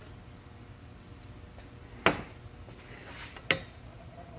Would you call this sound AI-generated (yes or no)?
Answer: no